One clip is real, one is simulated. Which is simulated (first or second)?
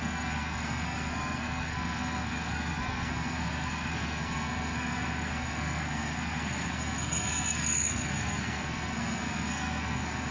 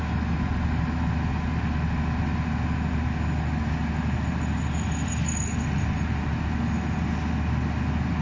first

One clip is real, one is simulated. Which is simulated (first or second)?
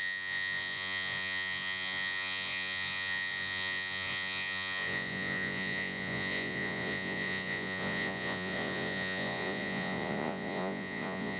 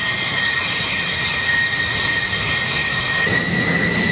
first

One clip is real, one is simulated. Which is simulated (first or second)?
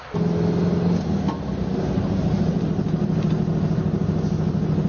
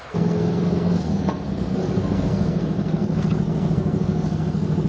second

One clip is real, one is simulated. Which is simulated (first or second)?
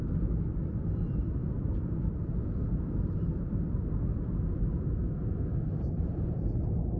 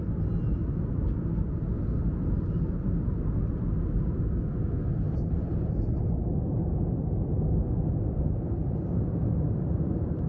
first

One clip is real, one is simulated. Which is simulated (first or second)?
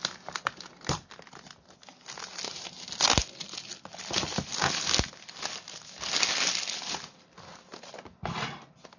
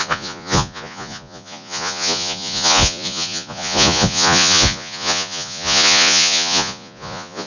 second